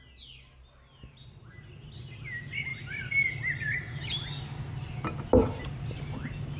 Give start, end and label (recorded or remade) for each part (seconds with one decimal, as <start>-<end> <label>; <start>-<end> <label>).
0.0-6.6 recorded